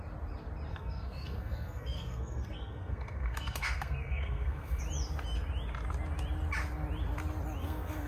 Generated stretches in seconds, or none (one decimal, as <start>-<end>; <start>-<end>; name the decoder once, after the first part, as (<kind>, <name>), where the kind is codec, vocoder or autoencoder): 0.7-4.8 (codec, SNAC); 7.6-8.1

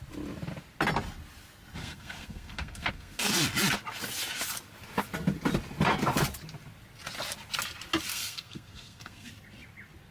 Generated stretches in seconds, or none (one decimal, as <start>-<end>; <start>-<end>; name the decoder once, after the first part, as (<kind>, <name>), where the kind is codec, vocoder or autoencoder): 1.8-3.3 (codec, SNAC); 8.1-9.3